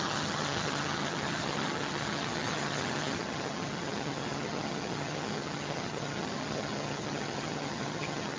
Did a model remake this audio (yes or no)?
yes